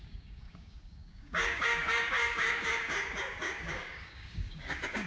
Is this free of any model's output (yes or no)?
no